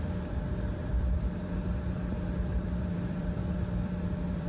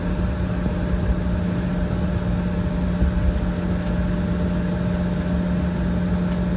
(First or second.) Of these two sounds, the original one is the second